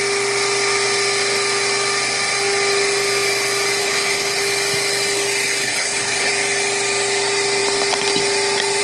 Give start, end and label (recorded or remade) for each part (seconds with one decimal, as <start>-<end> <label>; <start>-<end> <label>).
0.0-3.8 recorded; 3.8-4.4 remade; 4.4-5.6 recorded; 5.6-6.3 remade; 6.3-8.8 recorded